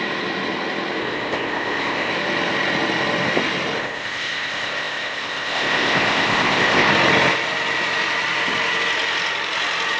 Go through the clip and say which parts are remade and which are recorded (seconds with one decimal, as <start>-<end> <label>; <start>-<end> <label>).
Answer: 0.0-1.0 recorded; 1.0-2.1 remade; 2.1-3.8 recorded; 3.8-6.9 remade; 6.9-10.0 recorded